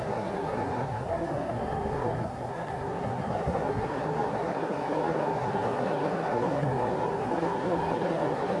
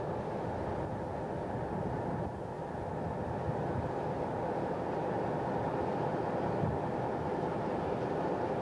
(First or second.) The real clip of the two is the second